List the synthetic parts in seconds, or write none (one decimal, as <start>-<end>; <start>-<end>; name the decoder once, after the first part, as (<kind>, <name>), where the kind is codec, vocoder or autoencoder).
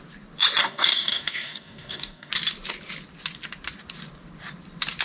0.6-2.3 (codec, DAC)